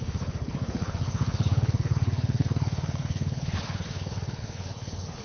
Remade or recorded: remade